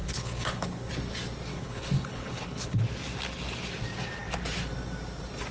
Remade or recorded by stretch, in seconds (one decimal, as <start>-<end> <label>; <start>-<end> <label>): 0.0-0.9 remade; 0.9-1.5 recorded; 1.5-2.8 remade; 2.8-5.5 recorded